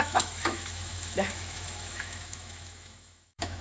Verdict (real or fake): fake